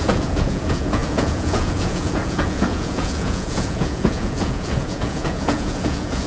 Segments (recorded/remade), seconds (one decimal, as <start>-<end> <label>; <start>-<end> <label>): 0.0-6.3 remade